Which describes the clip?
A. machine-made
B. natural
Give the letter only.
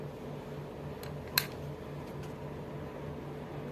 B